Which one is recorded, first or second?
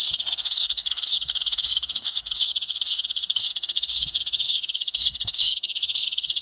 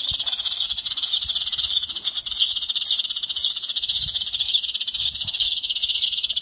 second